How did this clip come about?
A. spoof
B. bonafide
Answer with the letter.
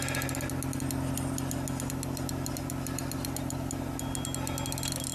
B